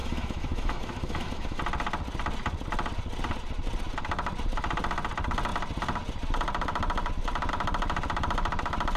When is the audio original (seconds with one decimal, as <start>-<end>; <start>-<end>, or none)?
1.6-9.0